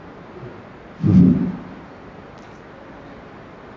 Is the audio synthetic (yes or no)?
no